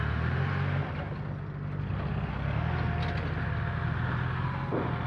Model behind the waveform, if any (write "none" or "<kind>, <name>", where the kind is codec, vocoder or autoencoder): none